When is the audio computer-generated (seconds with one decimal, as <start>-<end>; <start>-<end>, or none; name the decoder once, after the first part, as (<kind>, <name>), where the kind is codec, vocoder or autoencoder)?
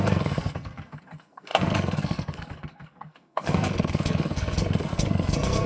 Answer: 0.0-5.7 (codec, SNAC)